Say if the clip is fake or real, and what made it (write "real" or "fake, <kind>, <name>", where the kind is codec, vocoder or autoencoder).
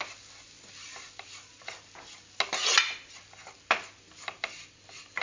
real